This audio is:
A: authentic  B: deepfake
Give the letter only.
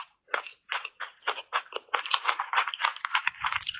B